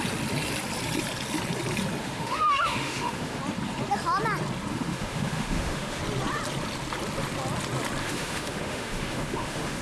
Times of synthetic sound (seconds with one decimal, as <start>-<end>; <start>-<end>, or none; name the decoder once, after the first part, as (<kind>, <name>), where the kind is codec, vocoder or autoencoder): 2.0-3.4 (autoencoder, DAC-VAE); 4.7-6.0; 8.0-9.8